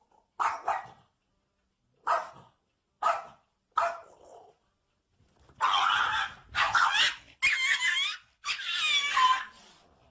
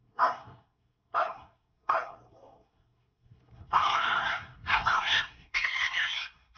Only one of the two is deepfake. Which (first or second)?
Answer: second